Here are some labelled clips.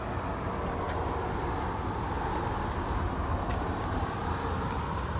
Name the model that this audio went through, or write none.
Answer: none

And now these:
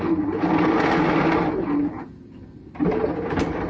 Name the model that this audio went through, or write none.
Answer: none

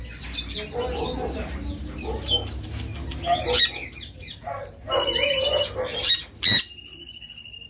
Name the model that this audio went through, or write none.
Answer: none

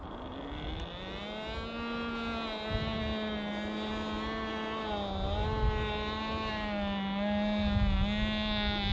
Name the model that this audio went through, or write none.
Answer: none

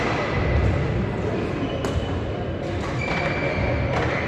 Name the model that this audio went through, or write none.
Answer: none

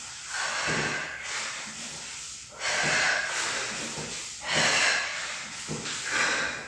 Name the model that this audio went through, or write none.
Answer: none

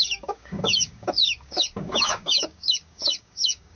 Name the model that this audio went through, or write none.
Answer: codec, DAC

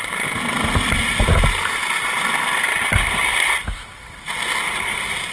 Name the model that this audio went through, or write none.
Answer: none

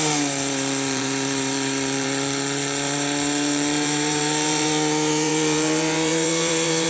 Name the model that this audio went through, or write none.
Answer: vocoder, BigVGAN v2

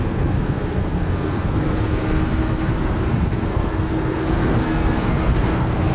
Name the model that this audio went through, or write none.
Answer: codec, SNAC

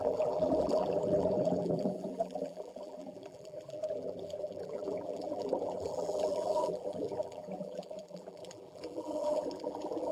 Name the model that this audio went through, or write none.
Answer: vocoder, BigVGAN v2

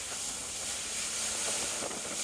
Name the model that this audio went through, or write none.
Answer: none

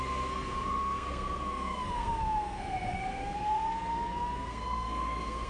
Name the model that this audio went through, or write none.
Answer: codec, SNAC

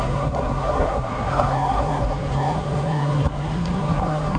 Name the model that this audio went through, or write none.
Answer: codec, SNAC